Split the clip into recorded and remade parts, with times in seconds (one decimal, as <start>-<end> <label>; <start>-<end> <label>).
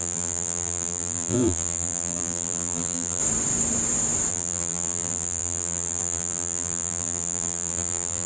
0.0-3.2 remade; 3.2-4.3 recorded; 4.3-8.3 remade